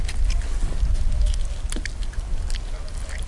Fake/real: real